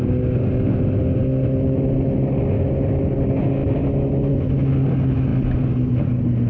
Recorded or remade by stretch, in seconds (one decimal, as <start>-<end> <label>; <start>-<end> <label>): 0.0-6.5 recorded